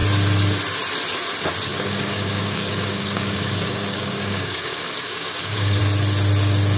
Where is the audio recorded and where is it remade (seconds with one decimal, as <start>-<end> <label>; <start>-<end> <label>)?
0.0-1.7 recorded; 1.7-5.8 remade; 5.8-6.8 recorded